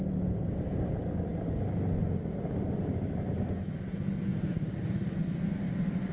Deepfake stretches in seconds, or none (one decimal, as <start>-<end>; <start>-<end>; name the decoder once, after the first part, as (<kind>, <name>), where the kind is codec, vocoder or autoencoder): none